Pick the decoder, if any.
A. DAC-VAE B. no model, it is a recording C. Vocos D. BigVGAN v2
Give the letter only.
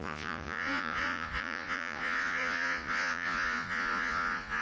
C